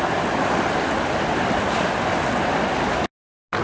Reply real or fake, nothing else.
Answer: real